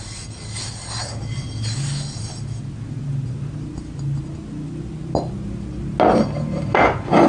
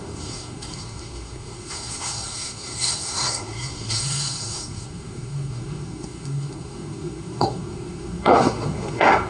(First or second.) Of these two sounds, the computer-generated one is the second